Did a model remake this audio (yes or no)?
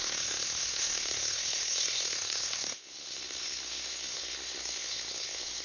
yes